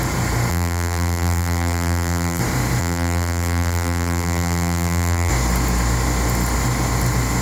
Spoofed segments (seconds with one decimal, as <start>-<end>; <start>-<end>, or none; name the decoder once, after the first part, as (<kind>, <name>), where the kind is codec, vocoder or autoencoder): 0.5-2.4 (vocoder, BigVGAN v2); 2.8-5.3